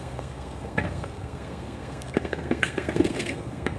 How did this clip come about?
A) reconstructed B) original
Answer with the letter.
A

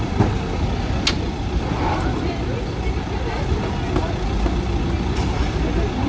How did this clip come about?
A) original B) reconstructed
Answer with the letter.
A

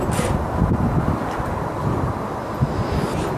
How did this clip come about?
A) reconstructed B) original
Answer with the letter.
B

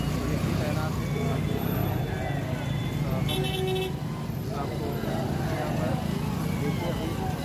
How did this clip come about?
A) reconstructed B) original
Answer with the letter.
B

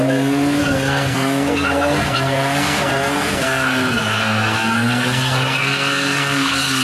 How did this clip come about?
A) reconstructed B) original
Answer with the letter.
A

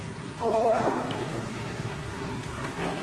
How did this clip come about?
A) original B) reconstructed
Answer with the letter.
B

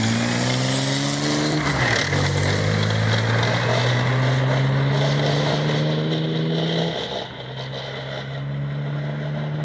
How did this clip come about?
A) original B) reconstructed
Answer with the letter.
A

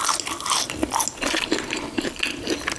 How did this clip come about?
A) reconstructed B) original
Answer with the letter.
B